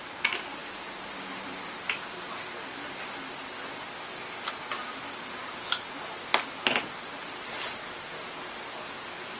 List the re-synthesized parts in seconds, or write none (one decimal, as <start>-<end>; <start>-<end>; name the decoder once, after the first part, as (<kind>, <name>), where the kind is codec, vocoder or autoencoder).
none